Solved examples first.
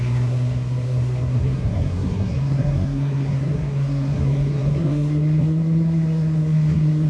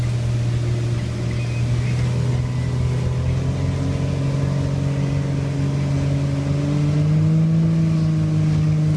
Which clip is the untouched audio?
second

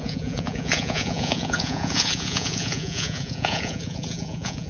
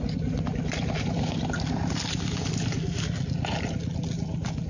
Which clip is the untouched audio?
second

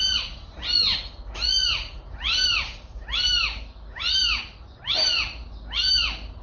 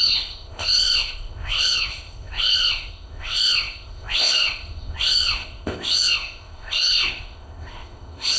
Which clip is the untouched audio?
first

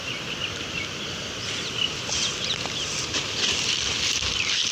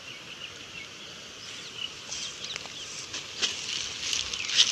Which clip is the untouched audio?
second